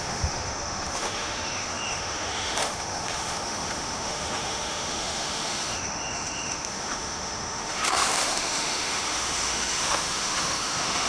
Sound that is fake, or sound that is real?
fake